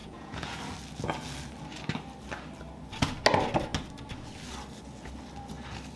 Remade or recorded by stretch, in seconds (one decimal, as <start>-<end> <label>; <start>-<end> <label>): 0.0-0.6 remade; 0.6-6.0 recorded